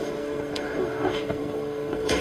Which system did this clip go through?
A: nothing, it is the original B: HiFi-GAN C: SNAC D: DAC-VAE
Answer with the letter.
C